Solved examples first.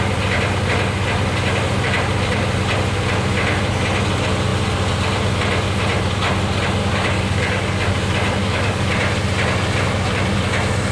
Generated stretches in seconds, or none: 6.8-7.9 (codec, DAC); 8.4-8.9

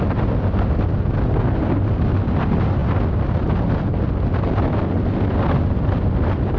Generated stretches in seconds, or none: none